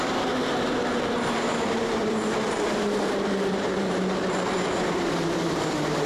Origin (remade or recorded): remade